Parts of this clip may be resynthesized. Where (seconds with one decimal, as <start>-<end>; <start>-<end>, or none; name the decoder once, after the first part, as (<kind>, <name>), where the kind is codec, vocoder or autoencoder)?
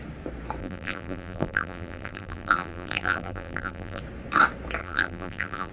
0.6-4.0 (vocoder, BigVGAN v2); 4.8-5.7